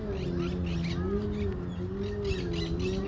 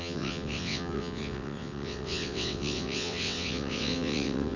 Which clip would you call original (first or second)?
first